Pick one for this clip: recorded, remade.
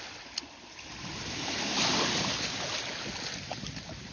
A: recorded